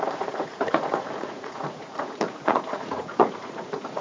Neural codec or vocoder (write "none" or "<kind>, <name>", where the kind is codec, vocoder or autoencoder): vocoder, Vocos